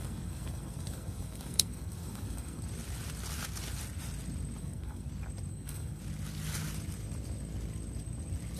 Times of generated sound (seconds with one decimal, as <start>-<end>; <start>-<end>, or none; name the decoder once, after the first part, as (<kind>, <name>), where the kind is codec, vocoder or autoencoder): 0.0-2.6 (codec, SNAC); 4.6-5.1; 5.5-6.0